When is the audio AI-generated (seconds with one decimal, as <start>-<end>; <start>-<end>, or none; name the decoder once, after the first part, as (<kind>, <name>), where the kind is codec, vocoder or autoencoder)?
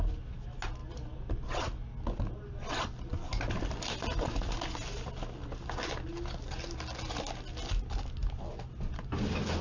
none